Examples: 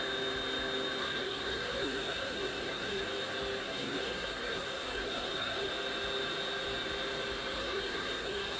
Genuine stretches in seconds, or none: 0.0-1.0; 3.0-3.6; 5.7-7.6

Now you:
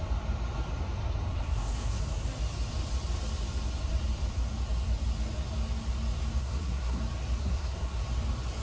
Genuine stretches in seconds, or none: 0.0-1.3; 2.0-6.4; 7.0-7.4; 8.0-8.6

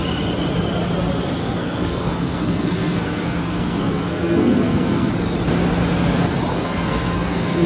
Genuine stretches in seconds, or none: 0.0-1.4; 5.1-6.5

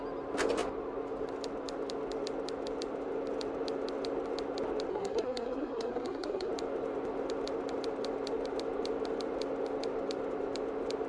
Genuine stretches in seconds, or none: 0.0-4.9; 6.5-11.1

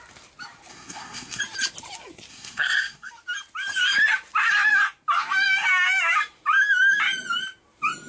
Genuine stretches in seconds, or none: 0.0-0.7; 1.4-2.3; 3.1-8.1

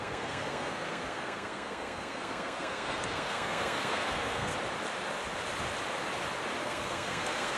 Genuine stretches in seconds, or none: 4.5-6.6

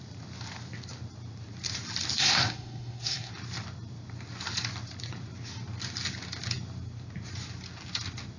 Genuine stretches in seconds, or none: 0.0-2.2; 3.3-8.4